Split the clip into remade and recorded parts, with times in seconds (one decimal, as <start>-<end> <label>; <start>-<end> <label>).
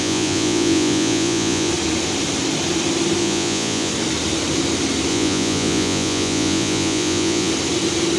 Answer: 0.0-1.7 remade; 1.7-3.2 recorded; 3.2-3.9 remade; 3.9-5.1 recorded; 5.1-7.5 remade; 7.5-8.2 recorded